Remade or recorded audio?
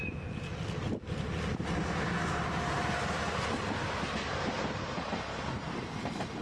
recorded